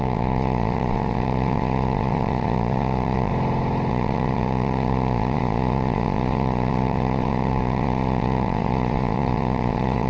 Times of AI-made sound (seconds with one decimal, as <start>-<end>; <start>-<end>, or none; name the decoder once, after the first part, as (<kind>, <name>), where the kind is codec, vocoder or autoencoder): 0.0-3.3 (vocoder, Vocos); 3.9-10.1